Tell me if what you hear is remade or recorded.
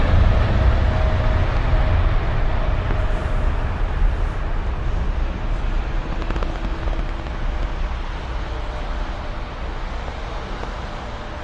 recorded